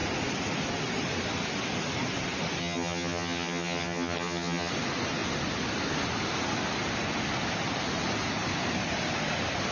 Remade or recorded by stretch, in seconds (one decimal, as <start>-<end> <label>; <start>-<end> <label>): 0.0-2.6 recorded; 2.6-4.7 remade; 4.7-9.7 recorded